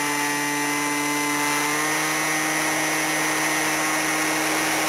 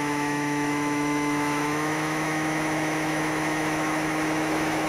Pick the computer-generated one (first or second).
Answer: second